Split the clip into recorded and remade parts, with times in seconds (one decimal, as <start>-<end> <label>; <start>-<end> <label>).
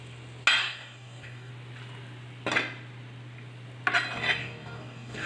0.0-0.6 recorded; 0.6-1.5 remade; 1.5-4.4 recorded; 4.4-5.3 remade